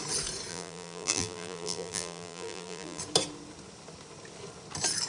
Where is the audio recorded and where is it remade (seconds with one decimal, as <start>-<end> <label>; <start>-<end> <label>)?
0.0-0.5 recorded; 0.5-3.0 remade; 3.0-5.1 recorded